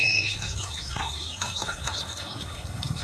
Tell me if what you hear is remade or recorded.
remade